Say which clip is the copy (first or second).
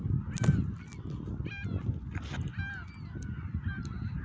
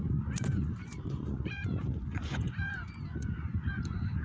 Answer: second